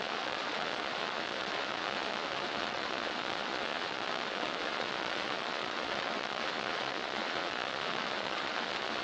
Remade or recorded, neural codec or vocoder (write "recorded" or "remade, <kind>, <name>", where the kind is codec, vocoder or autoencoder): remade, vocoder, Vocos